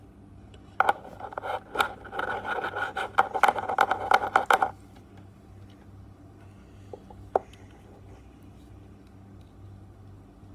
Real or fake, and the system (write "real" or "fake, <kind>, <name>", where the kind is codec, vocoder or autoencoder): real